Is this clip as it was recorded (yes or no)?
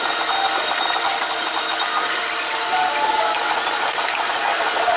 yes